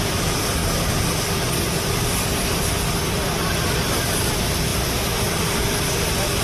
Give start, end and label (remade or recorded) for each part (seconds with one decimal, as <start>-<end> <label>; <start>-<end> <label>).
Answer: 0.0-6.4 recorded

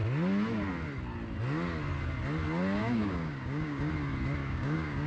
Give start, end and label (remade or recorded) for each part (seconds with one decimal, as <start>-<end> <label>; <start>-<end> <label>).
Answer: 0.0-2.8 recorded; 2.8-3.9 remade; 3.9-4.4 recorded; 4.4-5.1 remade

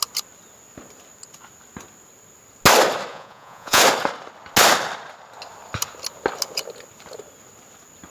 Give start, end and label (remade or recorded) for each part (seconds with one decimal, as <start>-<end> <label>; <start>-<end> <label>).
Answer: 0.0-3.1 recorded; 3.1-3.8 remade; 3.8-8.1 recorded

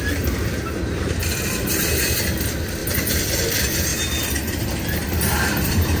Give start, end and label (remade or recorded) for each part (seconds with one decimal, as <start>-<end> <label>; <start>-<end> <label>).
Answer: 0.0-3.9 remade; 3.9-4.6 recorded; 4.6-6.0 remade

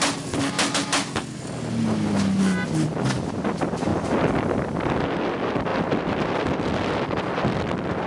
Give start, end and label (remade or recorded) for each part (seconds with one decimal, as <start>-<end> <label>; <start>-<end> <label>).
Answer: 0.0-8.1 recorded